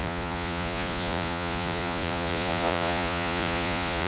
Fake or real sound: fake